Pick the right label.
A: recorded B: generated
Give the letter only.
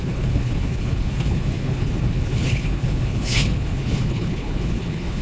B